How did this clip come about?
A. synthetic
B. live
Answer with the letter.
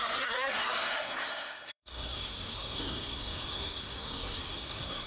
A